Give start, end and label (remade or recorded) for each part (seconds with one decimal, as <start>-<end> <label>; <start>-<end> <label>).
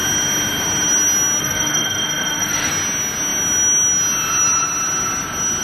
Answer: 0.0-1.4 recorded; 1.4-2.7 remade; 2.7-5.6 recorded